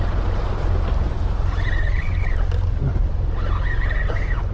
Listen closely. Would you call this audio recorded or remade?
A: recorded